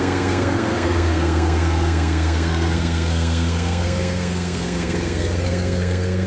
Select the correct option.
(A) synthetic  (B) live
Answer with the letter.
A